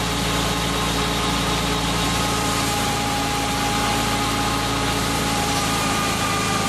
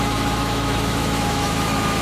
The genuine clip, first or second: first